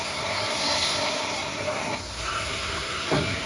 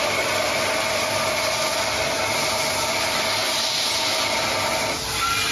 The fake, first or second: first